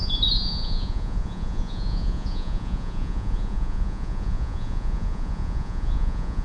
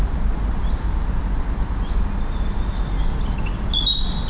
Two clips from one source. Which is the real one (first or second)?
second